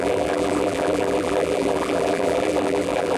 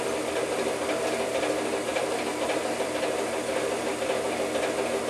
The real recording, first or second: second